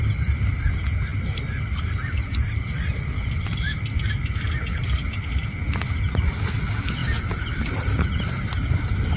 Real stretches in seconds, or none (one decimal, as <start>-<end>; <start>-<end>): 0.0-9.2